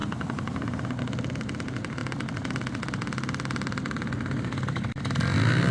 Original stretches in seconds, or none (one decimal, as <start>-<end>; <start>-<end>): 0.0-5.7